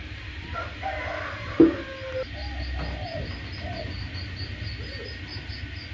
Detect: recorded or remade recorded